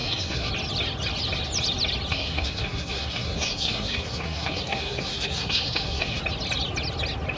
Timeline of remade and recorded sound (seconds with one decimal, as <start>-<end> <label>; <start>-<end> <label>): 0.0-0.5 remade; 0.5-2.1 recorded; 2.1-6.2 remade; 6.2-7.4 recorded